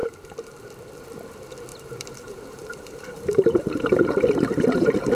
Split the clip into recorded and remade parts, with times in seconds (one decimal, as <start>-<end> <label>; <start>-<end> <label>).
0.0-1.7 recorded; 1.7-5.1 remade